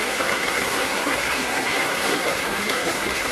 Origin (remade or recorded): remade